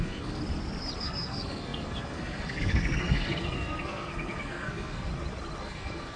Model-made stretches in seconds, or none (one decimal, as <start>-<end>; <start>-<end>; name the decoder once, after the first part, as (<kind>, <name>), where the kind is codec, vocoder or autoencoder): 0.0-0.4 (codec, SNAC); 1.0-5.1; 5.6-6.2